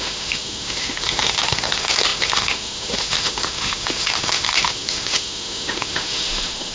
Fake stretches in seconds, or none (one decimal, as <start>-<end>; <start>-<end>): 0.0-6.7